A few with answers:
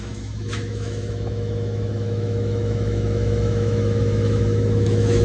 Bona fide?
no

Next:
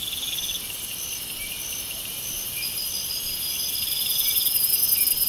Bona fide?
yes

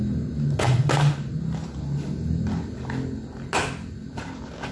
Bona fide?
yes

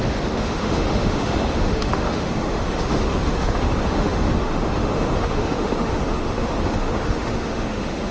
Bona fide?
no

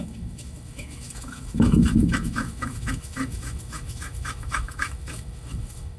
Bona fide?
no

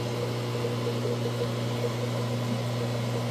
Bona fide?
yes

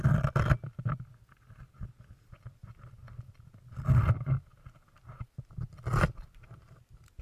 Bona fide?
yes